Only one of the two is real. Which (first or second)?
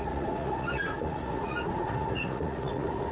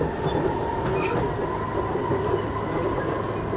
second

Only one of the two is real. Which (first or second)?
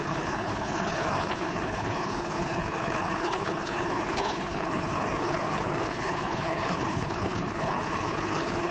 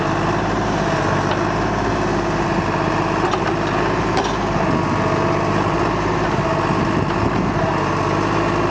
second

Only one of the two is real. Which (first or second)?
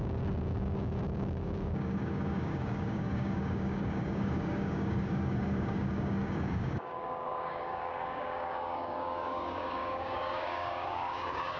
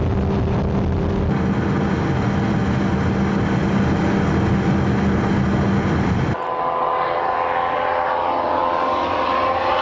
second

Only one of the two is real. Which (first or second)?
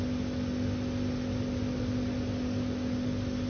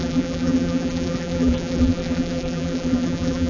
first